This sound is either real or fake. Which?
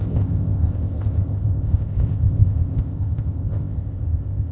fake